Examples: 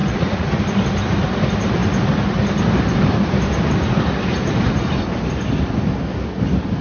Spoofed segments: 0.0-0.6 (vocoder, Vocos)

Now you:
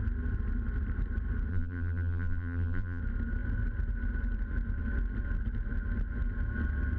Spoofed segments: 1.5-3.0 (vocoder, BigVGAN v2)

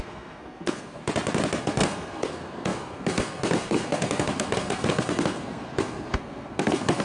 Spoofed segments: 0.0-1.0 (codec, SNAC); 1.6-7.0